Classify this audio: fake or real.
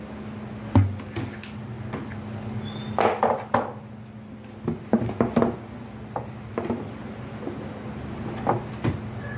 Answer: real